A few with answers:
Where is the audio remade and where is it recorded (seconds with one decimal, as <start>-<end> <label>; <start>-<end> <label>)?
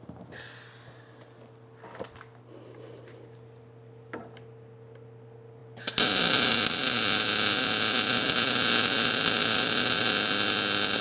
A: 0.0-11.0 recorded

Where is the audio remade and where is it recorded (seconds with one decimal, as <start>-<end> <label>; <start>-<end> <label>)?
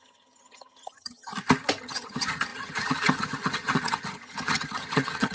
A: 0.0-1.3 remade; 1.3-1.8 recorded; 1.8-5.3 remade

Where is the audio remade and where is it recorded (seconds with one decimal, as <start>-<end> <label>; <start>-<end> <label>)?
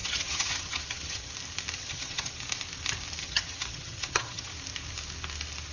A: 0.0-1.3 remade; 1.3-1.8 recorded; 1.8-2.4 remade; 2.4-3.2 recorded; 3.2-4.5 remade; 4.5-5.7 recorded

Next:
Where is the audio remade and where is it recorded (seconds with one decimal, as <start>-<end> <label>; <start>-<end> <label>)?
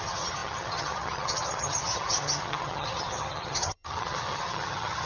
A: 0.0-5.1 remade